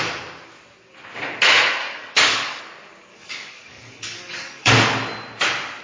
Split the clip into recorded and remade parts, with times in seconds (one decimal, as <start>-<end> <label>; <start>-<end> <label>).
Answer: 0.0-1.8 recorded; 1.8-2.6 remade; 2.6-3.1 recorded; 3.1-4.7 remade; 4.7-5.8 recorded